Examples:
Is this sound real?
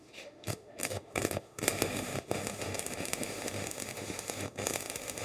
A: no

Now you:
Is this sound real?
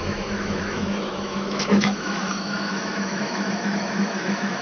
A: no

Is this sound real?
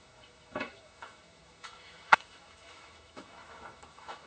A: no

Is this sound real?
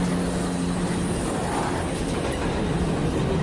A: yes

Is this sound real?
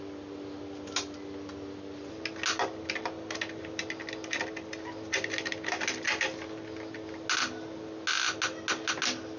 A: yes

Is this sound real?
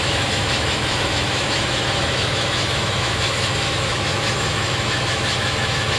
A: no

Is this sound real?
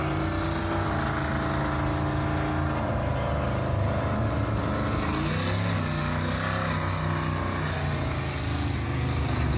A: yes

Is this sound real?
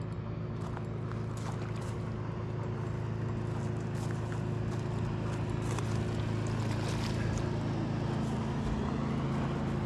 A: yes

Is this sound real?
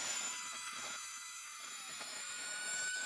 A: no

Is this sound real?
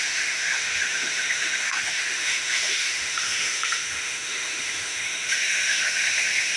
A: no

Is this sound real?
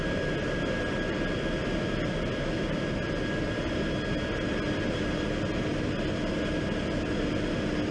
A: yes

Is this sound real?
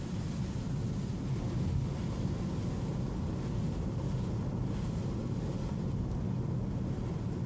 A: yes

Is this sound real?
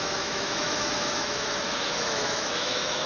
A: no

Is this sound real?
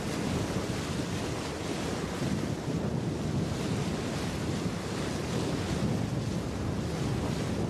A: yes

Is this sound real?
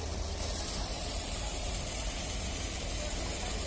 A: yes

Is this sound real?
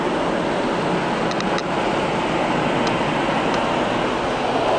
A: yes